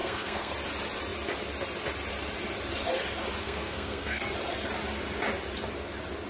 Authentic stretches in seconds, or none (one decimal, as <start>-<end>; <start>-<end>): 0.5-3.4; 4.2-6.3